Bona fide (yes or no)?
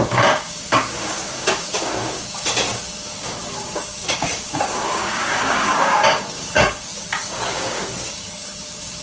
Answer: no